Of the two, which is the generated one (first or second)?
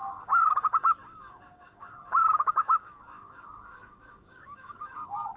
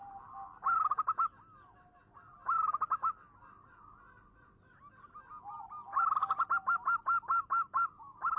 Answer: first